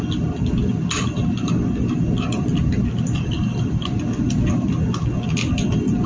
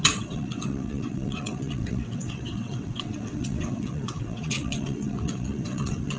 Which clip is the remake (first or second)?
second